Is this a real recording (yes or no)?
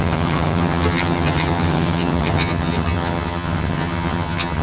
no